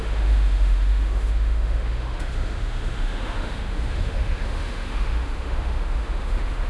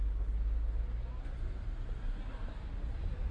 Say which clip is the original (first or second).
second